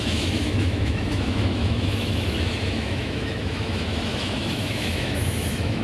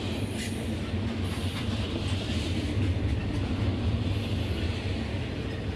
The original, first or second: second